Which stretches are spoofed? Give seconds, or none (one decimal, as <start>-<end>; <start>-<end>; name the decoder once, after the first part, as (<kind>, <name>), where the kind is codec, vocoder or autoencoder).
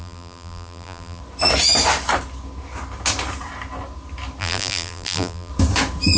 0.0-1.2 (vocoder, BigVGAN v2); 4.4-5.5